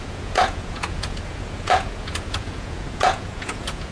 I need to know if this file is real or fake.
fake